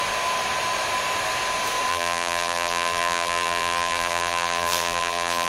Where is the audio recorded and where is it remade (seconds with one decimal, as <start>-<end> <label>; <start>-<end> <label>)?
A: 0.0-1.9 recorded; 1.9-5.5 remade